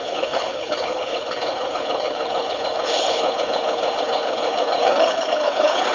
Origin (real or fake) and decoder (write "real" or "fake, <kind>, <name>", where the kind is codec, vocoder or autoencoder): fake, codec, HILCodec